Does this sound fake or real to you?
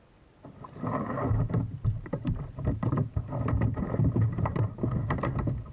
real